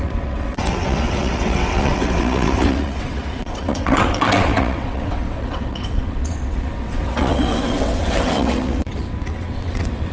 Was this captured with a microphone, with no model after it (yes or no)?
no